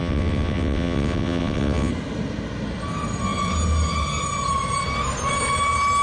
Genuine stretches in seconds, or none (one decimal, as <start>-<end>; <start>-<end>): 1.9-6.0